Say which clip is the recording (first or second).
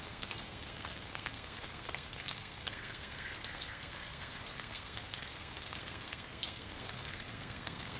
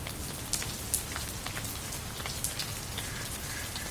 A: second